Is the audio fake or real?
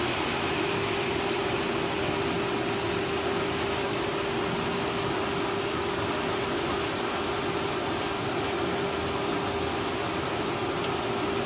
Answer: real